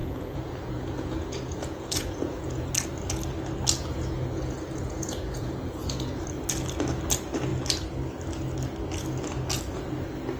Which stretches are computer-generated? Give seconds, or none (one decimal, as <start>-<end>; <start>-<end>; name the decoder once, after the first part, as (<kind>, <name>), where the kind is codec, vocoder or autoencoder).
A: 0.0-2.7 (vocoder, Vocos); 3.8-6.2